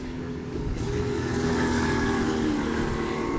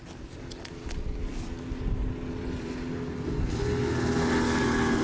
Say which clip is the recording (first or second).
second